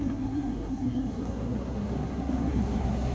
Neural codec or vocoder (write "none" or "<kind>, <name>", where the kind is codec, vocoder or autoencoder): codec, SNAC